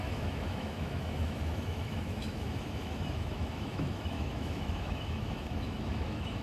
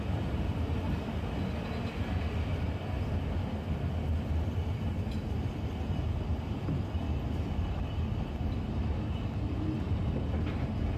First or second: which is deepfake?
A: first